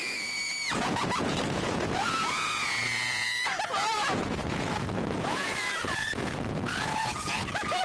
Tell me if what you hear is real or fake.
fake